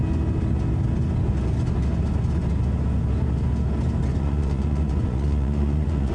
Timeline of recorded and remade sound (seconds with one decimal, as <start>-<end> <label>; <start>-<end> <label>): 0.0-4.1 recorded; 4.1-6.1 remade